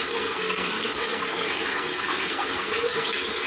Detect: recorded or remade remade